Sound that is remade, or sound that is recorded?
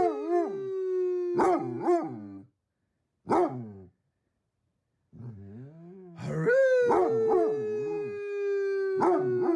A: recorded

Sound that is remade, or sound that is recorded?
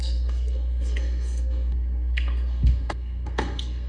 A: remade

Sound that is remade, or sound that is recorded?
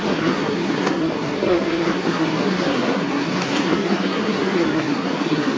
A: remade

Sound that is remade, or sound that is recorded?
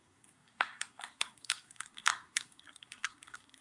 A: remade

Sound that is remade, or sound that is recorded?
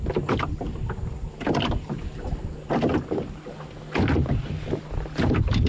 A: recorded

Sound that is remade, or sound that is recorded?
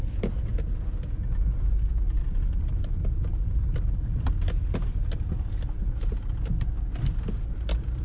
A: recorded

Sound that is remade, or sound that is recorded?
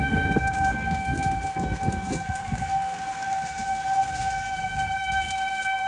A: remade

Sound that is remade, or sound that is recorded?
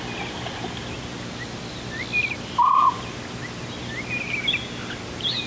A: recorded